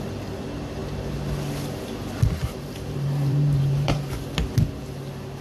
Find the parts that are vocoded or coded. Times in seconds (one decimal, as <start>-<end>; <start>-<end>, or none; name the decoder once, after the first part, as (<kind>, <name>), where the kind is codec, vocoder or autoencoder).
2.4-4.1 (vocoder, BigVGAN v2)